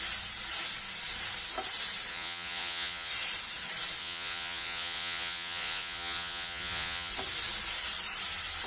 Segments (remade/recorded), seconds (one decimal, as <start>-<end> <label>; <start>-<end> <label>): 0.0-2.1 recorded; 2.1-3.1 remade; 3.1-4.0 recorded; 4.0-7.1 remade; 7.1-8.7 recorded